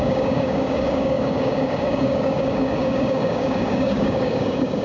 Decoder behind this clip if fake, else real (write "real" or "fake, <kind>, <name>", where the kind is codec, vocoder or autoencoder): fake, codec, DAC